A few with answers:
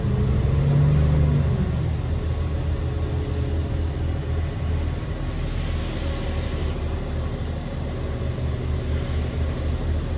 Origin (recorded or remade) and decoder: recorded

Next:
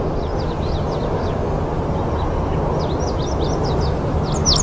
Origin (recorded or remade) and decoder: recorded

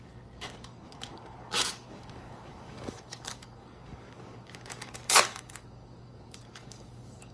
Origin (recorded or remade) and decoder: remade, codec, DAC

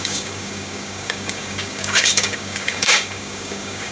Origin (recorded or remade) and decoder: remade, codec, DAC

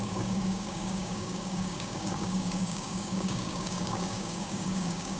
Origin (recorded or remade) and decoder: remade, codec, DAC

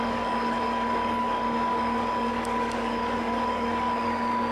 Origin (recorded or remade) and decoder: remade, codec, DAC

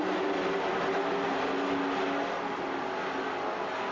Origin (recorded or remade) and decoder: recorded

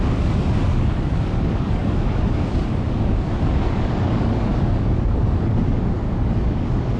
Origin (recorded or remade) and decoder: remade, codec, DAC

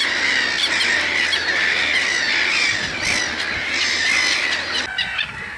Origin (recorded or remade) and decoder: recorded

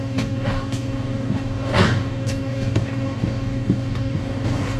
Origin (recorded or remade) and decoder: remade, codec, DAC